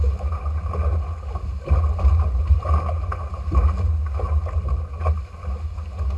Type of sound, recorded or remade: recorded